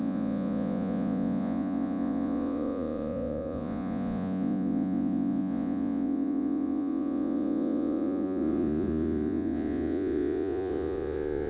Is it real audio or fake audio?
fake